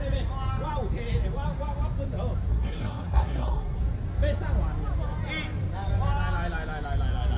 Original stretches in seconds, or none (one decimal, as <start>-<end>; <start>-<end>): 0.0-2.5; 3.8-7.4